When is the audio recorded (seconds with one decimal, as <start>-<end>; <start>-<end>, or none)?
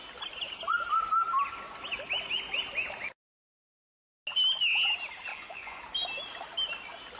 0.0-5.3; 5.8-7.2